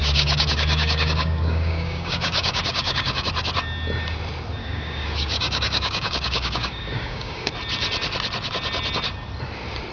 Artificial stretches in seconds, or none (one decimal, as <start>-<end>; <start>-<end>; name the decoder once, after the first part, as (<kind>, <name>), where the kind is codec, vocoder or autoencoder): 0.0-3.3 (codec, DAC); 4.6-7.5